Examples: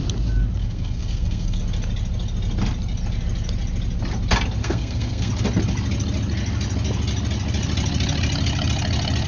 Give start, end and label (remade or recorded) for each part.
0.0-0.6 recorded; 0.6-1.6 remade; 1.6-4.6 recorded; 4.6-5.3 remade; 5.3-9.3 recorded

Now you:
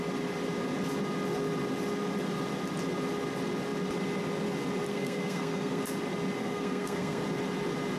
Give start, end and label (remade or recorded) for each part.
0.0-4.9 recorded; 4.9-5.8 remade; 5.8-6.4 recorded; 6.4-7.2 remade; 7.2-8.0 recorded

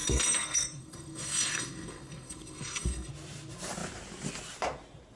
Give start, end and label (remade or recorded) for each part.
0.0-3.1 remade; 3.1-5.2 recorded

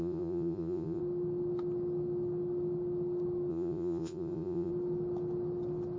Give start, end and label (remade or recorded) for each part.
0.0-1.0 remade; 1.0-3.5 recorded; 3.5-4.7 remade; 4.7-6.0 recorded